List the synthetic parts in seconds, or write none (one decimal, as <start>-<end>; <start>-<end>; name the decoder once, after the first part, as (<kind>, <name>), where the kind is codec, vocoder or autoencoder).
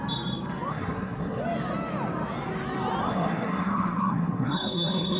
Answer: 0.7-1.4 (codec, SNAC); 3.0-5.2